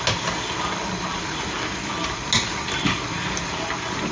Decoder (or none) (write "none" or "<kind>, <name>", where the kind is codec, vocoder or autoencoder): none